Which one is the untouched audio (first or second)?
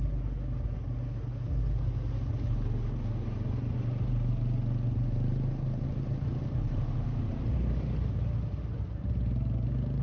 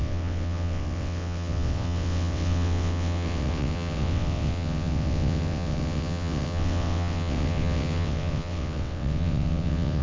first